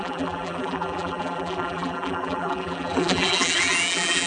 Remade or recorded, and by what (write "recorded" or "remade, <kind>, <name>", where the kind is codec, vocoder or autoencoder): remade, vocoder, BigVGAN v2